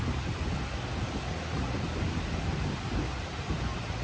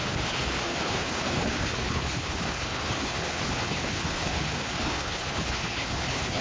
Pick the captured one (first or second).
first